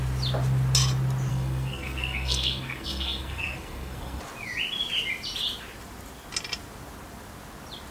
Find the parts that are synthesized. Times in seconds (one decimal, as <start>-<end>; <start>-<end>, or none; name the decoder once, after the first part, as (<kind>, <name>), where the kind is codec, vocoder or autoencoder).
1.3-4.2 (codec, SNAC)